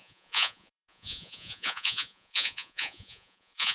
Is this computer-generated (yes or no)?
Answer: yes